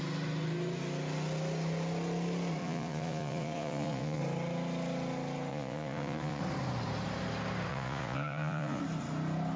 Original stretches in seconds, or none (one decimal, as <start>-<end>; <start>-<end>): 0.0-2.6; 4.2-5.5; 6.4-7.7; 8.8-9.6